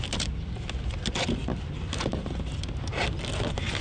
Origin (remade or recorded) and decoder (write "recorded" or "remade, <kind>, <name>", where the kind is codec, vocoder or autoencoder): recorded